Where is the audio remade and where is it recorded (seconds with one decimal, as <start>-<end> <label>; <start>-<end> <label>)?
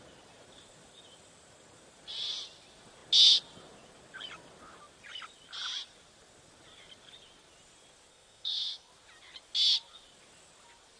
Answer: 0.0-8.1 recorded; 8.1-8.9 remade; 8.9-11.0 recorded